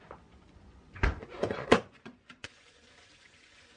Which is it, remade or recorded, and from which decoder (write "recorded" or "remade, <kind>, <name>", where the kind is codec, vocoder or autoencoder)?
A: remade, vocoder, Vocos